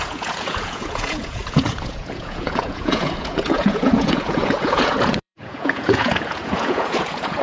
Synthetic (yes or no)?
yes